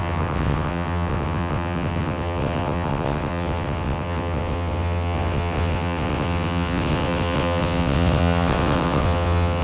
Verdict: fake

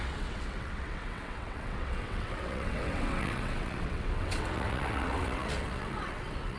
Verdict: fake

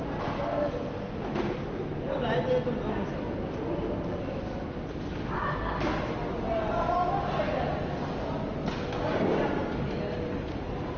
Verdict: real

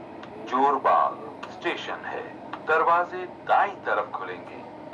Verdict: real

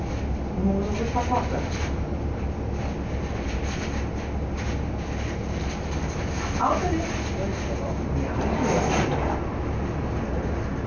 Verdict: real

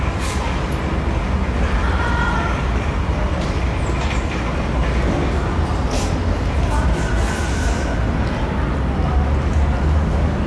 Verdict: real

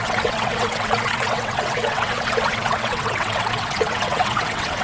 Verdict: fake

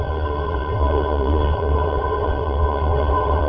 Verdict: fake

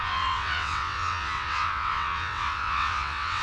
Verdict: fake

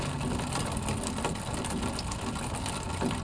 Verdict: real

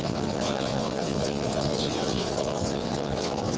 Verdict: fake